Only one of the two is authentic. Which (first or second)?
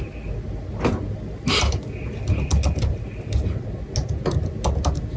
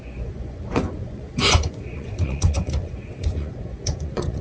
first